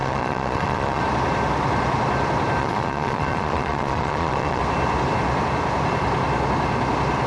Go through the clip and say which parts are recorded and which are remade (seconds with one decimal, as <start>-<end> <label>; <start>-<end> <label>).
0.0-1.0 remade; 1.0-2.6 recorded; 2.6-4.6 remade; 4.6-7.3 recorded